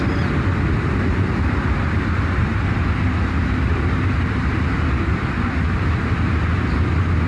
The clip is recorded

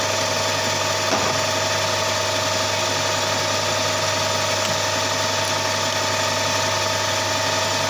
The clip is recorded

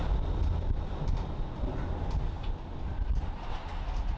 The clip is recorded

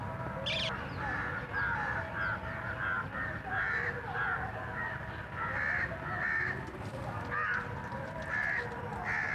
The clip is recorded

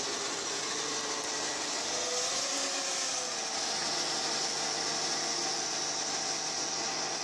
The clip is recorded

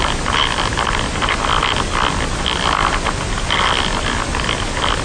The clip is recorded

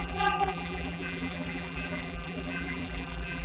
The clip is remade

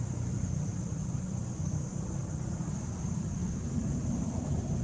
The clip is remade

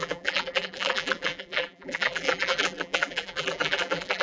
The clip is remade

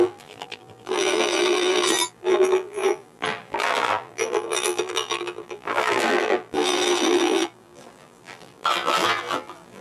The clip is remade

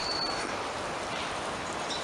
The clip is remade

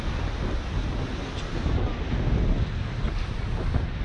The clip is recorded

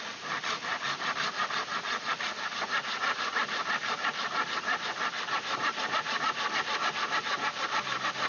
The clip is remade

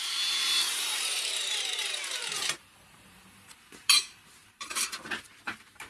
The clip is remade